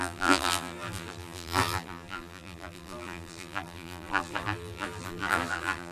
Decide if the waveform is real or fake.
fake